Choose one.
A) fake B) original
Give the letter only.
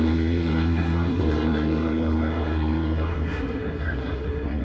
A